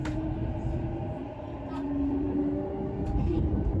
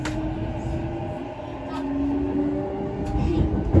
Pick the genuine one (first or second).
second